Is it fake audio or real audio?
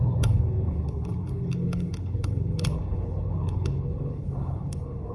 fake